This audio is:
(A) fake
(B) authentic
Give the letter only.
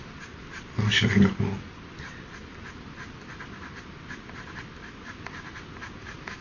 B